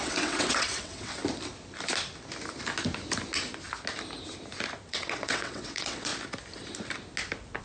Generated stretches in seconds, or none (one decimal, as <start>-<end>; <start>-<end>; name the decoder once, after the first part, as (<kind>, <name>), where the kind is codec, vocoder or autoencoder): 0.0-1.2 (vocoder, WaveNeXt); 4.9-6.1